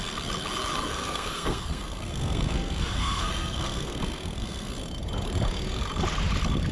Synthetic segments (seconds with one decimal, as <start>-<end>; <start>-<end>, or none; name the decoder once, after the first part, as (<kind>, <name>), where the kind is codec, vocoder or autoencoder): 0.9-4.7 (codec, SNAC)